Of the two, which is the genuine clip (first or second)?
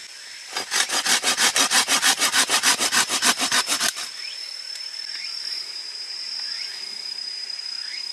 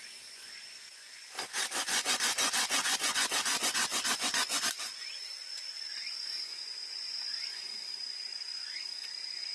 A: first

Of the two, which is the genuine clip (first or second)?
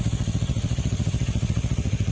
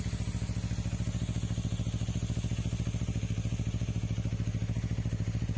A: second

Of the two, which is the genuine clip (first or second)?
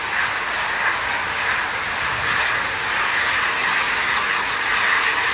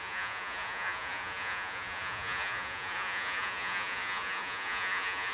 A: first